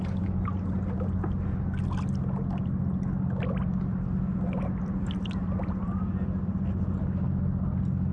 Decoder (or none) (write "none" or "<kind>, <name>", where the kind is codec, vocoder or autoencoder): none